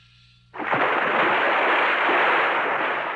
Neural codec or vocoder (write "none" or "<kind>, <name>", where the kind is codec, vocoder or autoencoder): none